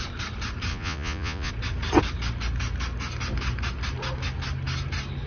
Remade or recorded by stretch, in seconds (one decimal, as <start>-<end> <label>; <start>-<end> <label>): 0.0-0.7 recorded; 0.7-1.5 remade; 1.5-5.3 recorded